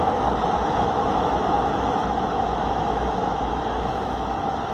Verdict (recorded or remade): remade